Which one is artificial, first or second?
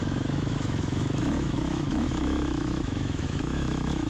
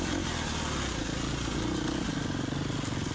first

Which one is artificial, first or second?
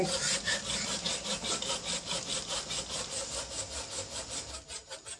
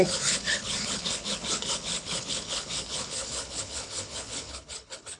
second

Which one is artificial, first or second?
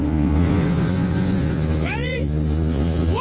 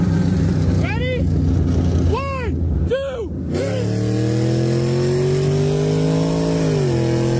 first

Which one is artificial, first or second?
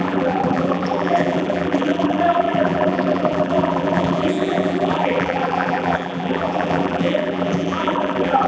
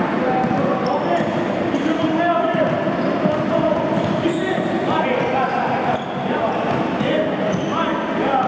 first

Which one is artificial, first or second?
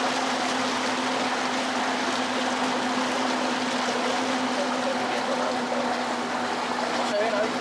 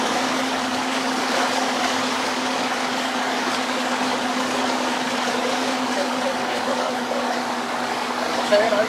second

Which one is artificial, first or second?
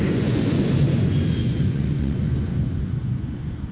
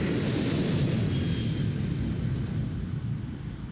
first